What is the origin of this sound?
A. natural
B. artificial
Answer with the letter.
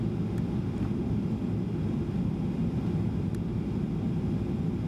A